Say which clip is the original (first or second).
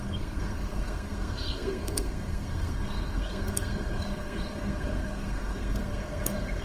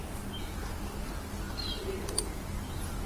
second